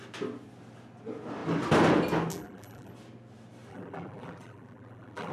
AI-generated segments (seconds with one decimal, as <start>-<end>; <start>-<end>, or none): 2.3-2.9; 3.7-5.3